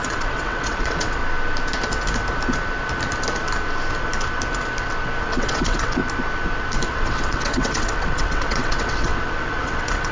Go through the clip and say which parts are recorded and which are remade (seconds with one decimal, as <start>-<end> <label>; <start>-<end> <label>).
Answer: 0.0-1.2 remade; 1.2-5.2 recorded; 5.2-6.0 remade; 6.0-6.9 recorded; 6.9-10.1 remade